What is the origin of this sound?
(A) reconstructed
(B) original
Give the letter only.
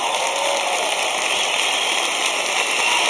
B